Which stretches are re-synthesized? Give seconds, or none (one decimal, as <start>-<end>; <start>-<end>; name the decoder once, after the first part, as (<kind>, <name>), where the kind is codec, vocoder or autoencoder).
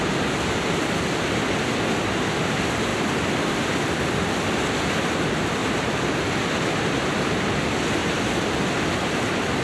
2.9-4.6 (vocoder, BigVGAN v2); 5.6-6.3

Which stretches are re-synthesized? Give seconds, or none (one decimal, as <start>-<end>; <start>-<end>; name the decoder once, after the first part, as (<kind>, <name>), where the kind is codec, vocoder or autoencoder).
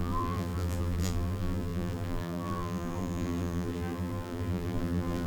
0.0-5.3 (vocoder, BigVGAN v2)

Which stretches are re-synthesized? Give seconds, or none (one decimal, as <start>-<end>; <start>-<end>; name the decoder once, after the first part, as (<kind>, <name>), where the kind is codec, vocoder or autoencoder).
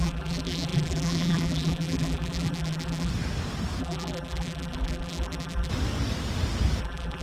0.0-3.1 (vocoder, BigVGAN v2); 3.8-5.7; 6.8-7.2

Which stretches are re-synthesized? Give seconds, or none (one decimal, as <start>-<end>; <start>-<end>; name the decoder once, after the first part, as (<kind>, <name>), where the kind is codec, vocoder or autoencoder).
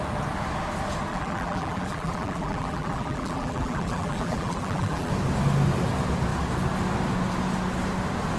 1.1-5.1 (vocoder, BigVGAN v2)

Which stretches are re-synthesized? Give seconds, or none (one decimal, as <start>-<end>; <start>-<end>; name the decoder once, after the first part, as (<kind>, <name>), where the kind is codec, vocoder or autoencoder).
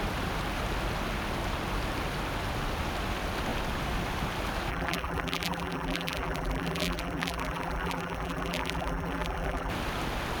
4.7-9.7 (vocoder, BigVGAN v2)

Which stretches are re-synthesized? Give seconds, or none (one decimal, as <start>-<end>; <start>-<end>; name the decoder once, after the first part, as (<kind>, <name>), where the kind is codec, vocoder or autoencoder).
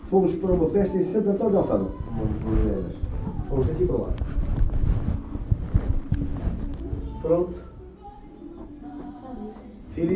none